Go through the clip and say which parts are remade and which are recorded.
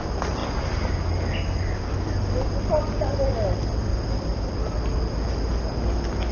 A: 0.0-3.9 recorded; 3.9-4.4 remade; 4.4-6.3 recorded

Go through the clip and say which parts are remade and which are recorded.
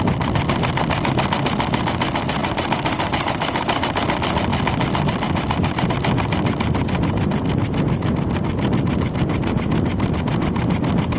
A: 0.0-2.4 recorded; 2.4-4.0 remade; 4.0-11.2 recorded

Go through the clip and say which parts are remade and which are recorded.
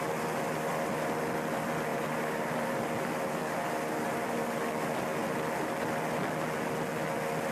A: 0.0-1.9 recorded; 1.9-2.8 remade; 2.8-7.5 recorded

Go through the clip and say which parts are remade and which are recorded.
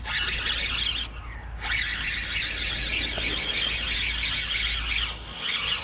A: 0.0-5.8 recorded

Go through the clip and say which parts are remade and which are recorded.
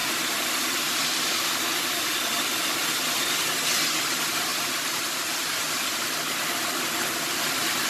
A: 0.0-3.2 remade; 3.2-4.5 recorded; 4.5-6.8 remade; 6.8-7.9 recorded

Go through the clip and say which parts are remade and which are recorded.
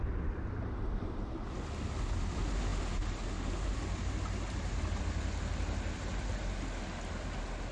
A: 0.0-7.7 recorded